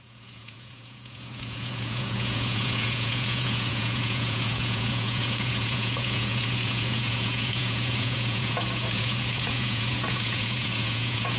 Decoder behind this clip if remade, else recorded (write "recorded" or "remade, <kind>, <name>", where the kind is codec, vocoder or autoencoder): remade, vocoder, Vocos